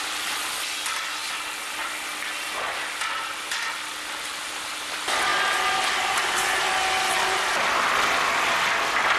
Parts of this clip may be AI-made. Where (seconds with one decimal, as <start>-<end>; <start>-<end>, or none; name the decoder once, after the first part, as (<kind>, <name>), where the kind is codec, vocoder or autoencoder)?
5.3-6.7 (vocoder, BigVGAN v2)